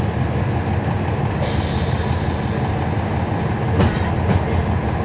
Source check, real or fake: real